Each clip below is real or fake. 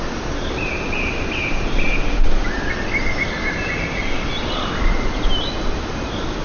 real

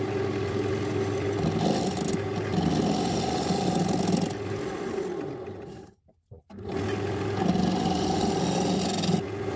real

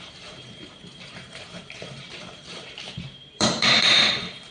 fake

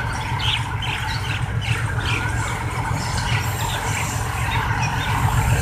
real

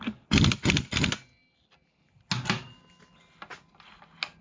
real